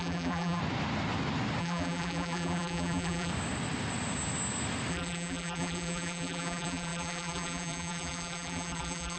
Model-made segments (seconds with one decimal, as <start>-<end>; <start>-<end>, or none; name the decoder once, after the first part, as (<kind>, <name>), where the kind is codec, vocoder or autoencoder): 0.0-0.6 (vocoder, BigVGAN v2); 1.6-3.3; 4.9-9.2